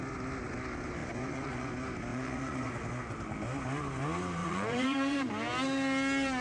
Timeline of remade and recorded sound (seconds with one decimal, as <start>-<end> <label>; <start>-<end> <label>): 0.0-1.0 recorded; 1.0-1.7 remade; 1.7-2.1 recorded; 2.1-2.7 remade; 2.7-4.4 recorded; 4.4-5.3 remade; 5.3-6.4 recorded